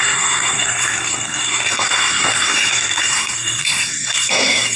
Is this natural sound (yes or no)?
no